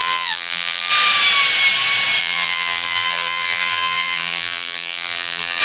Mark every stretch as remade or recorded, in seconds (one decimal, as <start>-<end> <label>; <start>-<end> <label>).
0.0-0.9 remade; 0.9-2.2 recorded; 2.2-5.6 remade